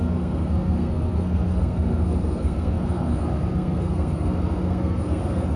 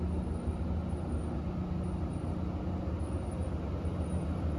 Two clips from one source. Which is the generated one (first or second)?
first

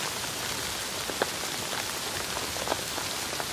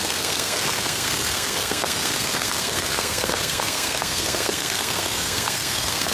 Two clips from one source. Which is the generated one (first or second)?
second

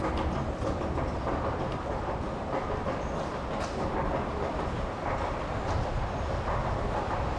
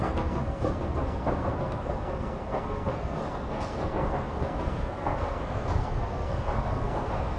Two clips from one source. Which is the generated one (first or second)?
second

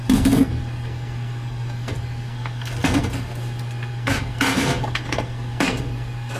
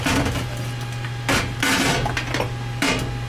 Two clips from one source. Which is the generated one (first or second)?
first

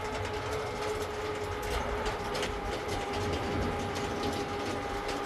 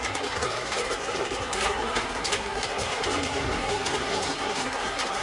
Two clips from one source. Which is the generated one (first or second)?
second